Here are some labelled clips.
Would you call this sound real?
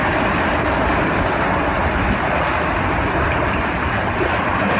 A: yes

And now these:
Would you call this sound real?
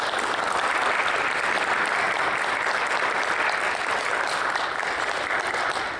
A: yes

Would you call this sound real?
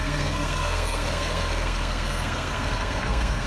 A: no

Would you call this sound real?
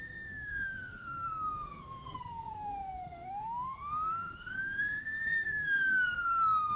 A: no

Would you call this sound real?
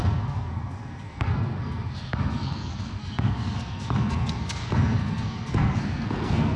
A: no